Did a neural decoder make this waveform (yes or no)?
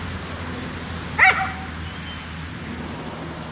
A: no